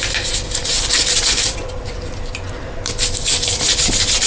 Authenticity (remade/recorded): recorded